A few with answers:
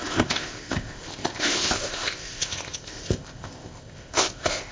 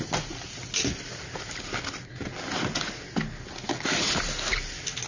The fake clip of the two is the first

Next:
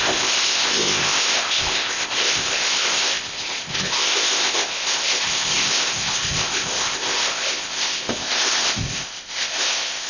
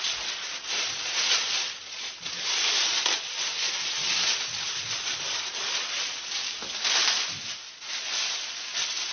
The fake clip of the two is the first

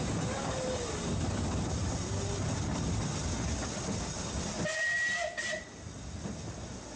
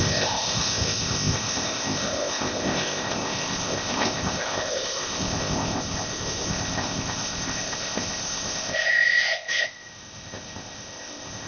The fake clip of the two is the second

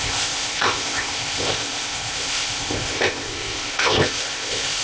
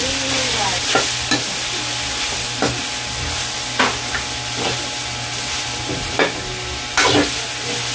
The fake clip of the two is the first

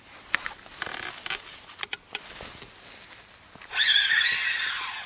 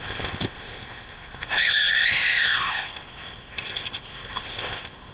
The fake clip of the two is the second